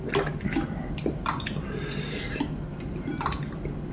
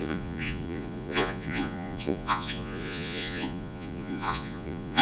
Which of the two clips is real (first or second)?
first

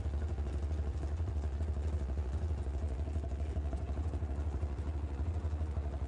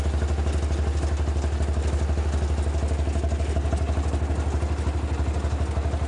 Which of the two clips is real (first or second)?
second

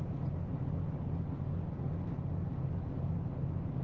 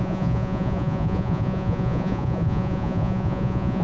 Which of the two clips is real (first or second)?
first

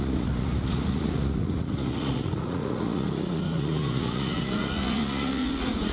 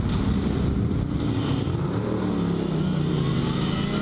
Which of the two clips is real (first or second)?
second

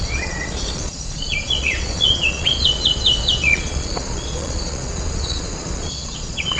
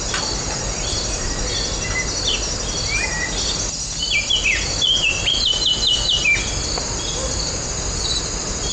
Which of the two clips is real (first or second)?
second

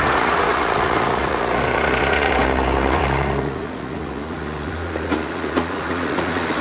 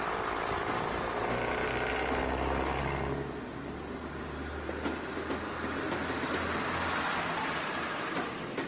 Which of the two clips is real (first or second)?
second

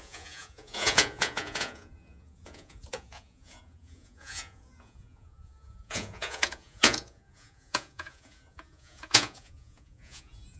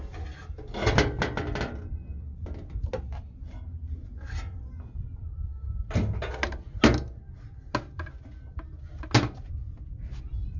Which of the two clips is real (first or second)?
second